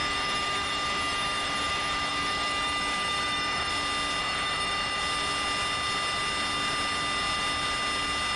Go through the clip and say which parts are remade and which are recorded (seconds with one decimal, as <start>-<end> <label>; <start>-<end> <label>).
0.0-3.7 remade; 3.7-4.2 recorded; 4.2-5.0 remade; 5.0-8.4 recorded

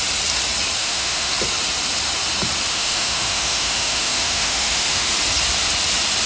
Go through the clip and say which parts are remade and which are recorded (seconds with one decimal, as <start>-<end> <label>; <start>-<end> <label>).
0.0-0.8 recorded; 0.8-1.3 remade; 1.3-2.7 recorded; 2.7-5.1 remade; 5.1-6.3 recorded

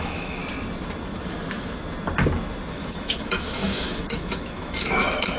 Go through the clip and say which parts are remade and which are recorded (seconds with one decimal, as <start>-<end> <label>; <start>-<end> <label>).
0.0-0.4 remade; 0.4-2.7 recorded; 2.7-5.4 remade

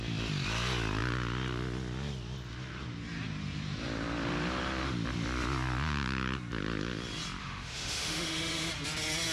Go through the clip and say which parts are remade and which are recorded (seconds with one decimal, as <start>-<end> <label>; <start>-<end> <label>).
0.0-7.4 recorded; 7.4-8.7 remade; 8.7-9.3 recorded